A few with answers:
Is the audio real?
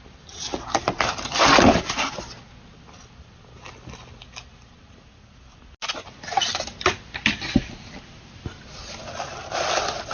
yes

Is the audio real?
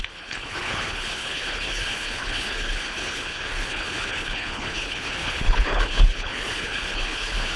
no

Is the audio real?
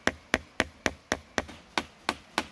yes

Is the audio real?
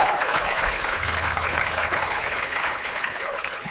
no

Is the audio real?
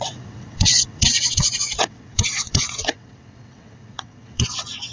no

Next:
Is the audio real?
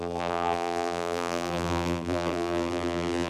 no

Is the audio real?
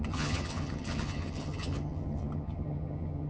no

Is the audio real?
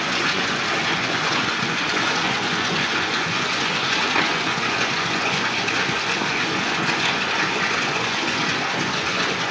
no